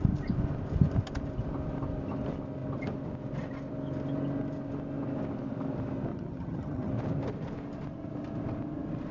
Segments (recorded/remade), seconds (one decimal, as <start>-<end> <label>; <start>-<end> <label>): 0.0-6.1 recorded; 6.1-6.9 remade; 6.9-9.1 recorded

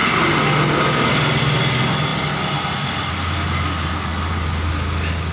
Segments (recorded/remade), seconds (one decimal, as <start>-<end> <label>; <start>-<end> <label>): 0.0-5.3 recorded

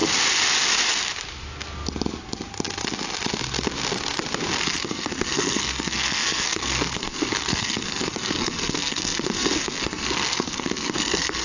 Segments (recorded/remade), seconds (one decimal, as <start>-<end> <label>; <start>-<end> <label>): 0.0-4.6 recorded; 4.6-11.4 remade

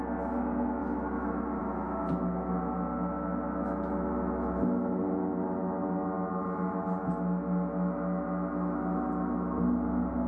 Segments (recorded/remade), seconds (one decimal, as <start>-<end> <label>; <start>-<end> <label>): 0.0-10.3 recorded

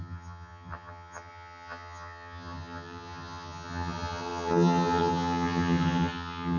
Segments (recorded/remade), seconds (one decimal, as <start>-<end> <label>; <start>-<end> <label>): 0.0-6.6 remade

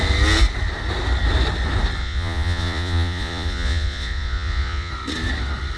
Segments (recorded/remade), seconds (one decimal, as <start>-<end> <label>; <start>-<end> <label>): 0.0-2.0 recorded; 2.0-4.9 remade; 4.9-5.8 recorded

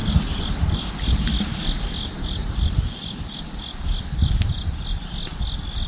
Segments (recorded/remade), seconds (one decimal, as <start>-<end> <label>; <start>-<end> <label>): 0.0-0.9 remade; 0.9-2.4 recorded; 2.4-5.4 remade; 5.4-5.9 recorded